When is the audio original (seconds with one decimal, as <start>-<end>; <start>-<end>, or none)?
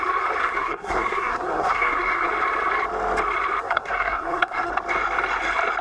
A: 0.0-0.4; 2.3-3.6; 4.7-5.8